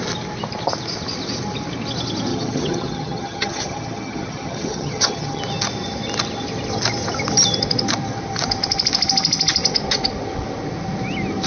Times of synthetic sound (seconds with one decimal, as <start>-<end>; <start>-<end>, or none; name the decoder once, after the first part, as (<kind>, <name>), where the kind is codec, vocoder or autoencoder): 2.3-5.4 (vocoder, HiFi-GAN)